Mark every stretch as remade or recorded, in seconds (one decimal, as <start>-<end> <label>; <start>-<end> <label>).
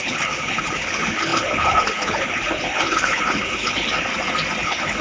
0.0-4.1 remade; 4.1-4.6 recorded; 4.6-5.0 remade